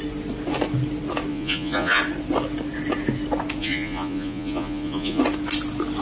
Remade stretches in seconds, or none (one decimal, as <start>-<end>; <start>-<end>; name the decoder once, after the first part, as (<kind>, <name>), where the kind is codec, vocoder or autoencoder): 1.3-2.0 (vocoder, Vocos); 3.6-5.2